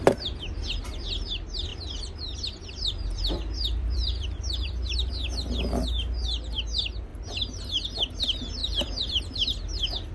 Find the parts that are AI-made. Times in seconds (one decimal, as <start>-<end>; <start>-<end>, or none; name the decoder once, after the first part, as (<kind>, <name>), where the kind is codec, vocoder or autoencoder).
1.7-5.1 (vocoder, BigVGAN v2); 8.6-9.2